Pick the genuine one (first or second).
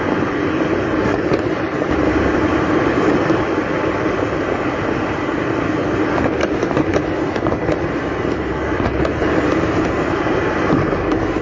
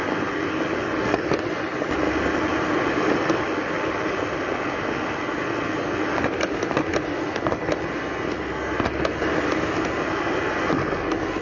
second